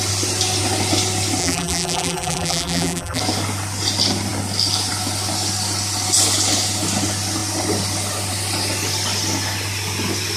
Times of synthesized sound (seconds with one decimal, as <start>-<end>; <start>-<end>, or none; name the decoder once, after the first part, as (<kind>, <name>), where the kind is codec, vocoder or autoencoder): 1.4-3.2 (vocoder, BigVGAN v2)